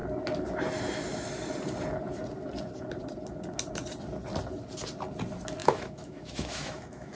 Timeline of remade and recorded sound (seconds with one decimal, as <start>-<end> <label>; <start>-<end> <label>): 0.0-5.6 recorded; 5.6-7.1 remade